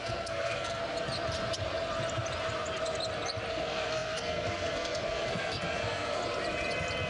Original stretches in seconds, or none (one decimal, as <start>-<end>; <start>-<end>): 0.8-3.5; 6.2-7.1